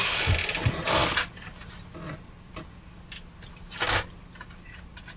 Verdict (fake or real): real